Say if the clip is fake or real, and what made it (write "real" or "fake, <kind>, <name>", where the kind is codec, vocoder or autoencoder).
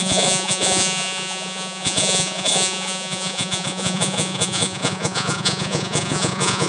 fake, vocoder, Vocos